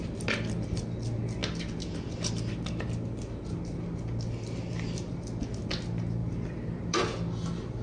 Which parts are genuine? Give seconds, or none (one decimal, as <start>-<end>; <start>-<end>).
0.0-6.2; 7.0-7.8